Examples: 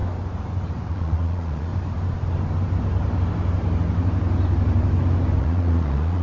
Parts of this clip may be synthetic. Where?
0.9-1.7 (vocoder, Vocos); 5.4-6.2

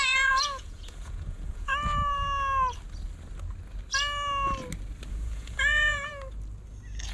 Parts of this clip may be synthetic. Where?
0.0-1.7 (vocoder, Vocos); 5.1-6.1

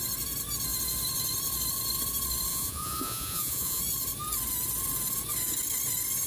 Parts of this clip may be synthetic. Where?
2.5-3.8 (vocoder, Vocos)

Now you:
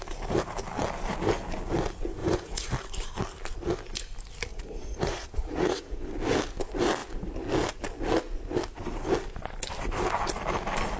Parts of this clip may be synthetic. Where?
2.2-2.7 (vocoder, Vocos); 4.5-6.1